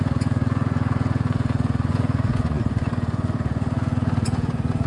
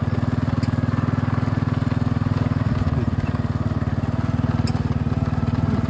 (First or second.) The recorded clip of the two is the second